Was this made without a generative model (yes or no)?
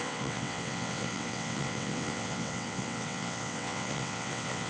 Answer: no